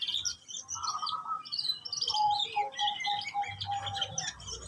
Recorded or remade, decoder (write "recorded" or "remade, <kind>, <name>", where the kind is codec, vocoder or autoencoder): recorded